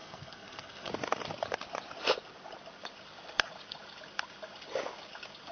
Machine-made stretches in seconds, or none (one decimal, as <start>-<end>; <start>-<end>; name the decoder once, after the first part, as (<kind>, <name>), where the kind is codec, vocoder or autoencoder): 0.0-0.9 (codec, SNAC)

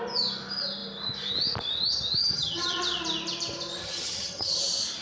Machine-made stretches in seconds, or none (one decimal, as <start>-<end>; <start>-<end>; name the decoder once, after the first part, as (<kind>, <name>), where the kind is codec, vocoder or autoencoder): 2.2-2.8 (vocoder, HiFi-GAN); 3.8-4.6

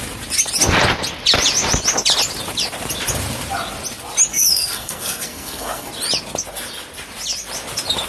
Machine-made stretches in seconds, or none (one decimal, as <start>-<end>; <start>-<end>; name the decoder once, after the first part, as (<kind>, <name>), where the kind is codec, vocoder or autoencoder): 4.3-5.9 (codec, SNAC)

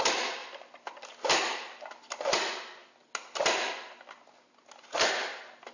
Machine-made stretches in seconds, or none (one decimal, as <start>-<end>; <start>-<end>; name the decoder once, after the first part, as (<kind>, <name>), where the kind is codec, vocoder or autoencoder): 0.4-0.9 (vocoder, BigVGAN v2)

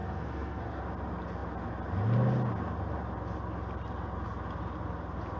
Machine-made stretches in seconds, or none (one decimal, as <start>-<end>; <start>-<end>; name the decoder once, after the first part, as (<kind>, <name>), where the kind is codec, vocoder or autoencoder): 0.0-0.8 (codec, SNAC)

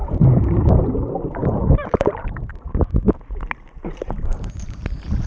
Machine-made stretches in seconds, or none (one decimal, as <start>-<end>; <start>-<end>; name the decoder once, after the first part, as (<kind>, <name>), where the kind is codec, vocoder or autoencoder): 0.0-0.7 (vocoder, BigVGAN v2); 1.4-2.5; 3.9-4.8

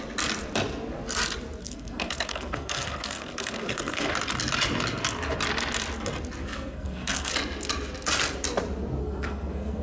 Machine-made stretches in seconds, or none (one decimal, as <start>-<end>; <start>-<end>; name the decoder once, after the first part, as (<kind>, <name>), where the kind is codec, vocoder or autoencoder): 1.6-4.1 (codec, SNAC); 6.4-7.3; 9.0-9.8

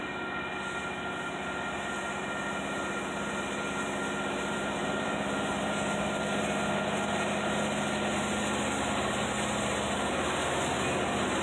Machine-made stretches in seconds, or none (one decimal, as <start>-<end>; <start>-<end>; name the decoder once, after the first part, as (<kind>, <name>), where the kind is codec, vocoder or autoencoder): 4.8-5.4 (vocoder, BigVGAN v2)